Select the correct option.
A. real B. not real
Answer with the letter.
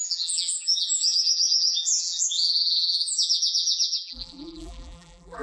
B